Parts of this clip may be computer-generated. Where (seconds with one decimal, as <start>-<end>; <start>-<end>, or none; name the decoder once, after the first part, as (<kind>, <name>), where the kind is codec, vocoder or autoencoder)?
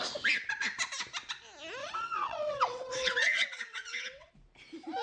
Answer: 1.8-4.3 (vocoder, WaveNeXt)